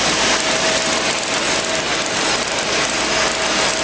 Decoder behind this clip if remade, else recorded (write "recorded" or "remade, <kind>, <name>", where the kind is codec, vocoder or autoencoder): recorded